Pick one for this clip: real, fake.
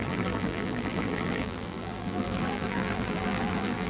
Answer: fake